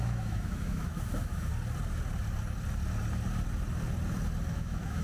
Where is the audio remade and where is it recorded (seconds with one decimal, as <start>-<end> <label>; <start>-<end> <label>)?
0.0-1.5 remade; 1.5-4.5 recorded; 4.5-5.0 remade